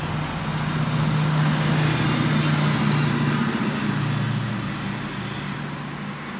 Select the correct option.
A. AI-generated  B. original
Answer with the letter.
B